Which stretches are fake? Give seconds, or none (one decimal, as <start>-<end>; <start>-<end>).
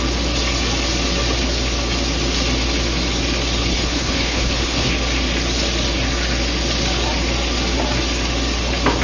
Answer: 3.6-4.9